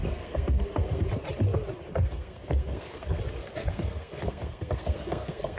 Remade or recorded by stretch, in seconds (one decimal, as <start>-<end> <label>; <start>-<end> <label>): 0.0-1.1 remade; 1.1-1.9 recorded; 1.9-3.2 remade; 3.2-3.6 recorded; 3.6-5.6 remade